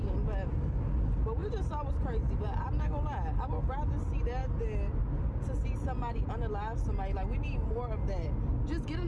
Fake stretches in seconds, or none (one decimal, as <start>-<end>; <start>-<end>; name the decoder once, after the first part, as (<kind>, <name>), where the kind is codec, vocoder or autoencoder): none